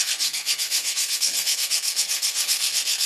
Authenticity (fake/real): fake